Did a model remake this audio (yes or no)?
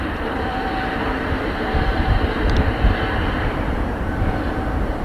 yes